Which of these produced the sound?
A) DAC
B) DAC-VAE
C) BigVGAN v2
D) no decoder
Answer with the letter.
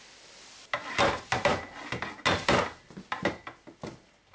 D